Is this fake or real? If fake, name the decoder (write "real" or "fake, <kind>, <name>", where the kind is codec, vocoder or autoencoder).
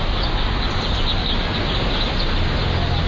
real